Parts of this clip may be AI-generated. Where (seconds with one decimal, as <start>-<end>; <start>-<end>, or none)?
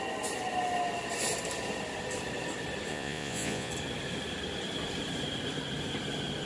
2.9-3.7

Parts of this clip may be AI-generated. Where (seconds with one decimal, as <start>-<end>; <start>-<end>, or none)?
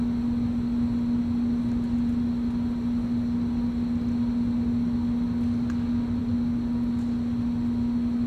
none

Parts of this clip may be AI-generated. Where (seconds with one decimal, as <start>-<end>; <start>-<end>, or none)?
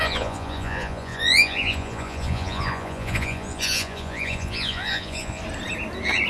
0.0-5.4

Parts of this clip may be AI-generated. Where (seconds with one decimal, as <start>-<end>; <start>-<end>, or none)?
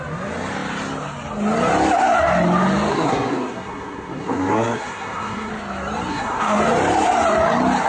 2.9-5.5; 6.1-6.6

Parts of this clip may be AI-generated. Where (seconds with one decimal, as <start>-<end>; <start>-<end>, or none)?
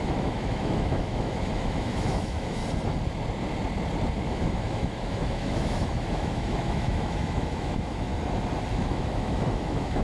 0.0-2.6; 4.2-8.1; 8.7-10.0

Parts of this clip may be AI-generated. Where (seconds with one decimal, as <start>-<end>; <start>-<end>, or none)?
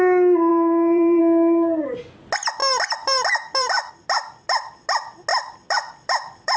0.5-1.2; 2.6-3.9; 5.3-6.6